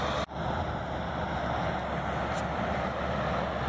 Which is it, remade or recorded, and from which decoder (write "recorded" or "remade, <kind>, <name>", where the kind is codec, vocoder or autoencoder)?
recorded